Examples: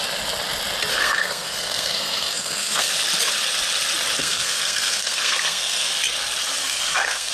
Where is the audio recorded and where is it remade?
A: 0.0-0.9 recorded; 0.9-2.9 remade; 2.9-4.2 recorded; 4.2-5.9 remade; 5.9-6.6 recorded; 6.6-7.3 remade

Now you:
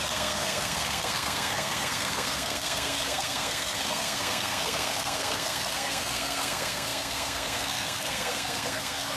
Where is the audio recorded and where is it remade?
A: 0.0-9.2 remade

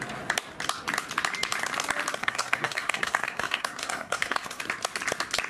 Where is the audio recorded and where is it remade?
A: 0.0-2.2 recorded; 2.2-4.6 remade; 4.6-5.5 recorded